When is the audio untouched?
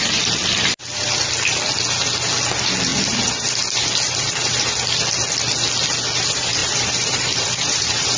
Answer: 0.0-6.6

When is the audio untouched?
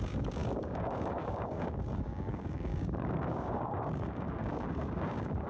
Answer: none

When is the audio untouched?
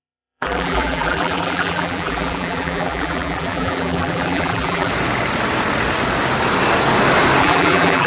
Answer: 4.9-7.4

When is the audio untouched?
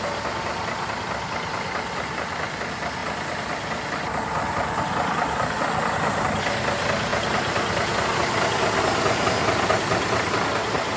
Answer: 0.0-11.0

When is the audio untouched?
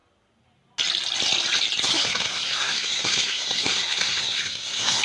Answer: 0.0-1.9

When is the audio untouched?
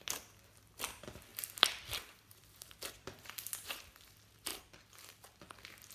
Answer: 0.0-1.3; 3.5-4.5; 5.4-5.9